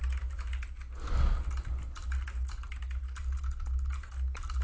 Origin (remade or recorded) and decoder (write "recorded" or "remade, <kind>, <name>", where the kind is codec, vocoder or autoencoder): recorded